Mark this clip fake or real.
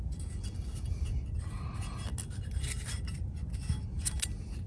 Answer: real